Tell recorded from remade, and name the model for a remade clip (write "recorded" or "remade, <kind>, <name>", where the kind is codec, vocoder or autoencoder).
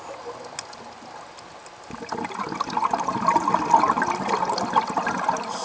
recorded